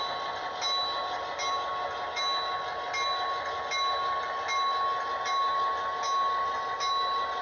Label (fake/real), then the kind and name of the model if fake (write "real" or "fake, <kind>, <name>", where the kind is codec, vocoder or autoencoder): real